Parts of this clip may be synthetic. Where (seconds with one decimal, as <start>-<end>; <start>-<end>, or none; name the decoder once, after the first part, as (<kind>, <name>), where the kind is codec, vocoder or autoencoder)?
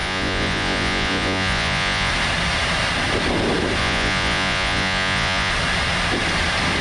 0.0-2.1 (vocoder, Vocos); 3.8-5.5